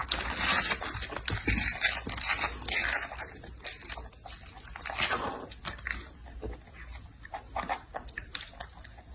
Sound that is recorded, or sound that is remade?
recorded